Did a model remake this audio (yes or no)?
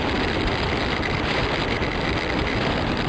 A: no